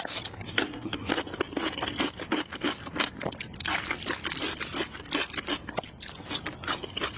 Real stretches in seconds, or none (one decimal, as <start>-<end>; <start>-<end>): 0.0-0.5; 1.1-7.2